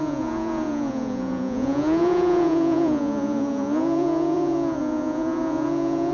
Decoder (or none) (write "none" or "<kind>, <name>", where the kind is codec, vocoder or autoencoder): vocoder, Vocos